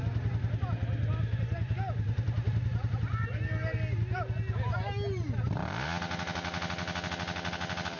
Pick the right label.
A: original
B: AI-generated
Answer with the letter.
A